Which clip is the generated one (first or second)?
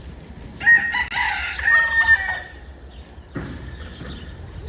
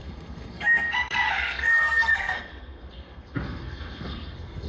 second